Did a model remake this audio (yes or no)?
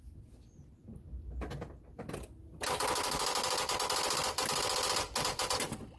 no